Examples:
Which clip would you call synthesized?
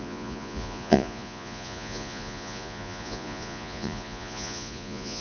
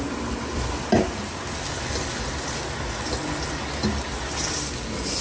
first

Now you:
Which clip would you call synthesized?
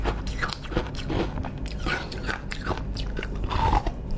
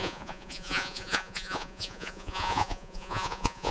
second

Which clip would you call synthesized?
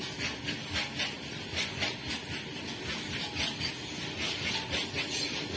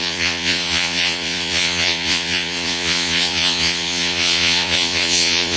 second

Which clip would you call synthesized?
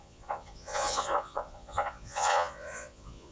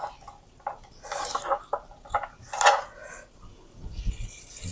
first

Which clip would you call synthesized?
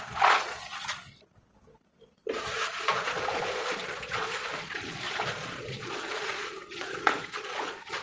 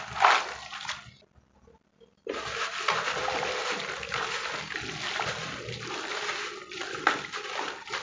first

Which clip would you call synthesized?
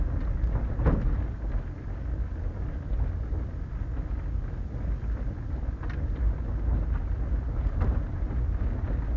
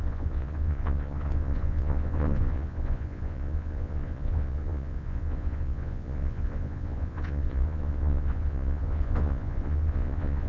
second